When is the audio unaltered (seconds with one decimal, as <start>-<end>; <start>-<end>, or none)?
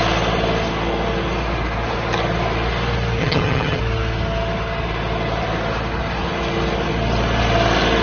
0.0-3.2; 3.8-8.0